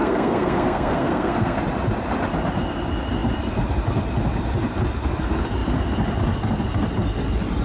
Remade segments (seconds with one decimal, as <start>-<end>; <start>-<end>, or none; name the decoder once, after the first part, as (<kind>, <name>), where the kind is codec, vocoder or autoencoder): 0.0-1.6 (codec, SNAC)